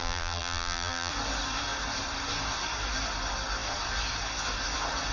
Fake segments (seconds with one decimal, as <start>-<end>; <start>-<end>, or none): 0.0-1.1